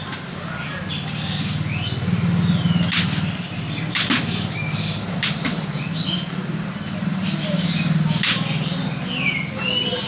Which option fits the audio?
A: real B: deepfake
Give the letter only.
A